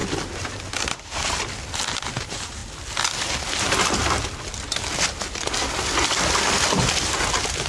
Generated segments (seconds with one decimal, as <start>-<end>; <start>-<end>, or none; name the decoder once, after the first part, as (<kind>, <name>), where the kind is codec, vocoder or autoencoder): 0.6-1.2 (vocoder, BigVGAN v2); 1.8-2.6; 7.0-7.7